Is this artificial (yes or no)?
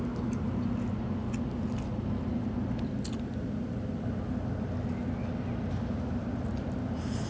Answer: no